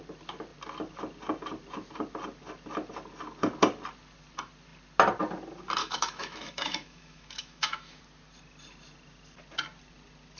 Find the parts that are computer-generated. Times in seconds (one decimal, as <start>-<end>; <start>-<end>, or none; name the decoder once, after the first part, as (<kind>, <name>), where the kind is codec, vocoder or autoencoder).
5.8-8.0 (autoencoder, DAC-VAE)